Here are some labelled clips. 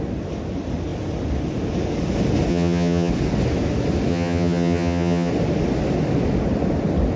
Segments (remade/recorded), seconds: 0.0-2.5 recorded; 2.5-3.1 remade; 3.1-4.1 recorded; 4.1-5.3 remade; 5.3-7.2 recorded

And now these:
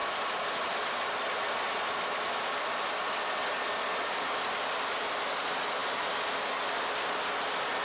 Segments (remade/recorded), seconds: 0.0-7.8 recorded

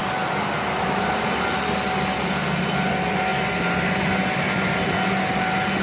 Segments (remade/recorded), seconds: 0.0-5.8 recorded